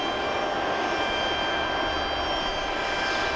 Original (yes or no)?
yes